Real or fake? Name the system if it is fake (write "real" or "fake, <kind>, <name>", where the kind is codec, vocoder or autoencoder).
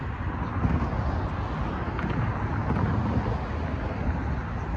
real